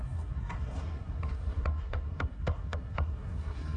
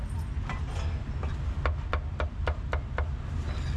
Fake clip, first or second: first